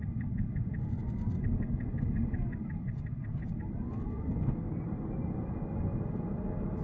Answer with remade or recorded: recorded